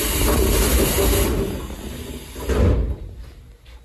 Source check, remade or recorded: recorded